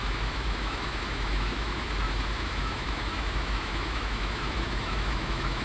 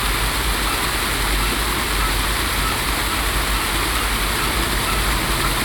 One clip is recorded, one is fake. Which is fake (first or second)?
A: first